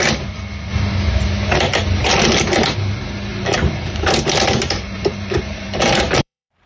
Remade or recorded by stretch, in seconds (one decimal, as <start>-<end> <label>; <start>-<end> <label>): 0.0-3.3 recorded; 3.3-6.7 remade